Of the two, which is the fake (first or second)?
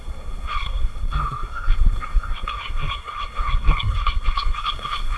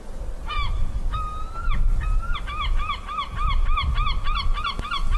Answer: first